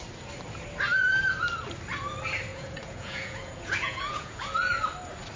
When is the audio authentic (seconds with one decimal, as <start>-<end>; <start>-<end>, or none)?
0.0-2.5; 4.4-5.4